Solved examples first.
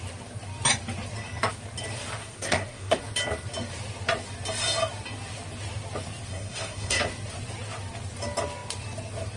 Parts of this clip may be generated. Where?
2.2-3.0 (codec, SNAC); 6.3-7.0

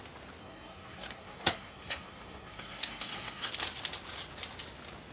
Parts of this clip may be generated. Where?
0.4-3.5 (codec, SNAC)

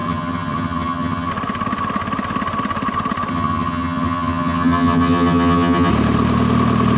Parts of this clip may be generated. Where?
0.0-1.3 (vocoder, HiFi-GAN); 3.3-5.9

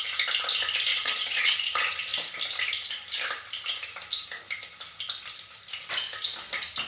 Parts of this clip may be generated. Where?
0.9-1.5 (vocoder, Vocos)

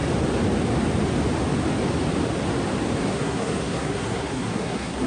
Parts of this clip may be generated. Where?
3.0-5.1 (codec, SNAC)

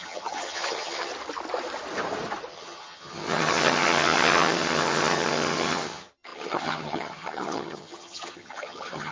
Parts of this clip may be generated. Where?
0.0-1.1 (vocoder, HiFi-GAN); 2.5-9.1

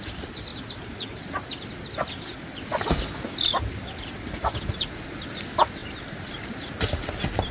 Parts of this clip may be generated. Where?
none

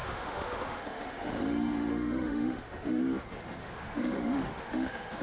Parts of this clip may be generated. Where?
0.0-3.0 (autoencoder, DAC-VAE); 3.6-5.2